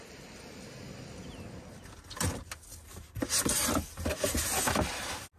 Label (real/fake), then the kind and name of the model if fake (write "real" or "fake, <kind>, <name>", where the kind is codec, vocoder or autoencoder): real